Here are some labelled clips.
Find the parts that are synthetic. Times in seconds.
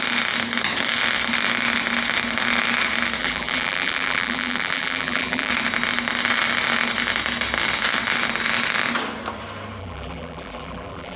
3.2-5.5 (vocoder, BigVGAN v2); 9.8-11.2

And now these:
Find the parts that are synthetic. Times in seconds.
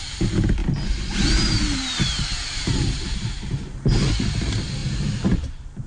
0.6-4.1 (vocoder, BigVGAN v2); 4.8-5.9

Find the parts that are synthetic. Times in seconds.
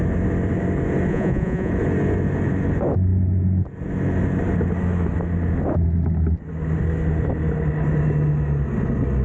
1.1-1.7 (vocoder, Vocos)